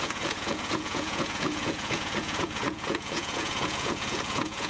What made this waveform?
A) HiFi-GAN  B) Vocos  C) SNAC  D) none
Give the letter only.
B